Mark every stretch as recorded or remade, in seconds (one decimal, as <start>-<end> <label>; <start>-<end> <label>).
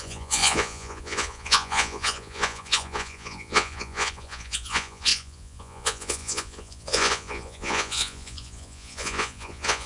0.0-9.9 remade